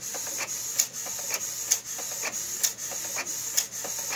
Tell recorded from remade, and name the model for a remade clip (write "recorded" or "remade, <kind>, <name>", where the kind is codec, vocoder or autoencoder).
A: recorded